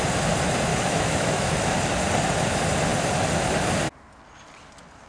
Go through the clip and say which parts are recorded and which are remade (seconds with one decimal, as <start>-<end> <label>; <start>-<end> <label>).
0.0-0.7 recorded; 0.7-1.5 remade; 1.5-5.1 recorded